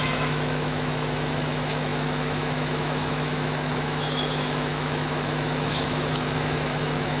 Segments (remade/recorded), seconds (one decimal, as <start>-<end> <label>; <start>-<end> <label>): 0.0-7.2 remade